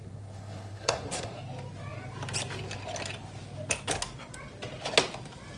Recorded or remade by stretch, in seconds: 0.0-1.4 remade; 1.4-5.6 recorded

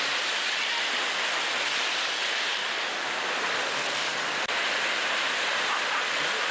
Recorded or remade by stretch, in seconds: 0.0-6.5 recorded

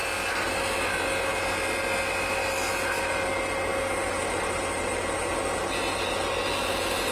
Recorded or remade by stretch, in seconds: 0.0-7.1 recorded

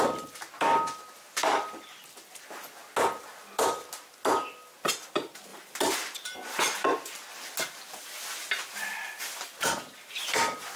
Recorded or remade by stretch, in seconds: 0.0-5.5 recorded; 5.5-6.6 remade; 6.6-10.8 recorded

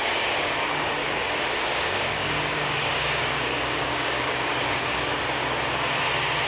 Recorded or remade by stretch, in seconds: 0.0-0.6 recorded; 0.6-1.2 remade; 1.2-1.7 recorded; 1.7-5.0 remade; 5.0-6.5 recorded

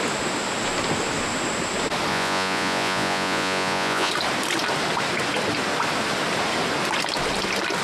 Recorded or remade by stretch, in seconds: 0.0-2.1 recorded; 2.1-4.1 remade; 4.1-7.8 recorded

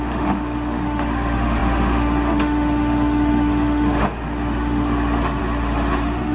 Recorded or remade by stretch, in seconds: 0.0-6.3 remade

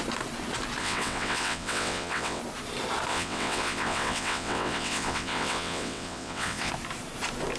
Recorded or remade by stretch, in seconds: 0.0-0.8 recorded; 0.8-2.4 remade; 2.4-3.1 recorded; 3.1-6.7 remade; 6.7-7.6 recorded